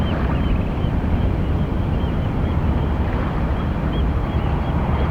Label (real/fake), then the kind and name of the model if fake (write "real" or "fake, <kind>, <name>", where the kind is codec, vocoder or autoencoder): fake, vocoder, BigVGAN v2